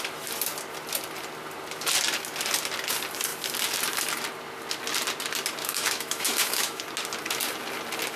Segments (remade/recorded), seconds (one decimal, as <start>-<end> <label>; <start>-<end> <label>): 0.0-5.6 recorded; 5.6-6.8 remade; 6.8-8.2 recorded

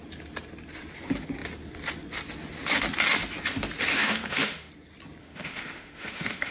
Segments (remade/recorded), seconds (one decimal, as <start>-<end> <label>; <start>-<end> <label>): 0.0-3.9 recorded; 3.9-4.7 remade; 4.7-5.2 recorded; 5.2-6.5 remade

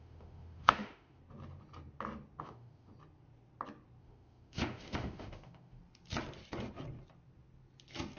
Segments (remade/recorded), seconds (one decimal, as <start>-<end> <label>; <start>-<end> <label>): 0.0-1.2 remade; 1.2-2.4 recorded; 2.4-2.9 remade; 2.9-4.0 recorded; 4.0-5.8 remade; 5.8-8.2 recorded

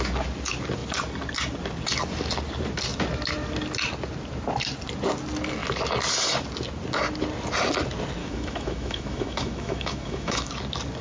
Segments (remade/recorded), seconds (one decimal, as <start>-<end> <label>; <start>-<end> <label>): 0.0-8.2 recorded; 8.2-10.5 remade; 10.5-11.0 recorded

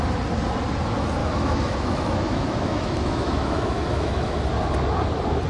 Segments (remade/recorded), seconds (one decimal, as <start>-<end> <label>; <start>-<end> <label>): 0.0-1.2 recorded; 1.2-4.5 remade; 4.5-5.5 recorded

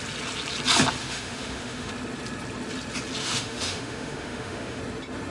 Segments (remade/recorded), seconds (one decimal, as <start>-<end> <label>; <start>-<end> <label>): 0.0-1.0 recorded; 1.0-1.9 remade; 1.9-3.2 recorded; 3.2-4.8 remade; 4.8-5.3 recorded

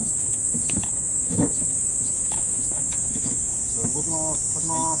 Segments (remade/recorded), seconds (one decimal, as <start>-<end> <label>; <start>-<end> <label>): 0.0-3.5 remade; 3.5-4.6 recorded; 4.6-5.0 remade